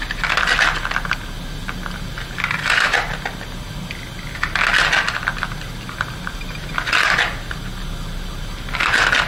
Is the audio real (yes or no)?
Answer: yes